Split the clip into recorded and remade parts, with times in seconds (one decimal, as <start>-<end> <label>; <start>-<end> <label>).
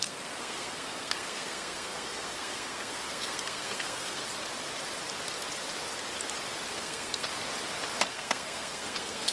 0.0-4.2 remade; 4.2-6.7 recorded; 6.7-7.3 remade; 7.3-8.1 recorded; 8.1-9.3 remade